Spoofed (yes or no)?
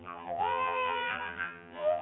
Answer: yes